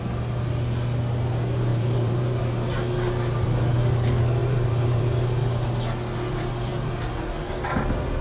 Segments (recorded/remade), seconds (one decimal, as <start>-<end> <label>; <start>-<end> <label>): 0.0-1.7 recorded; 1.7-2.4 remade; 2.4-4.4 recorded; 4.4-5.0 remade; 5.0-8.2 recorded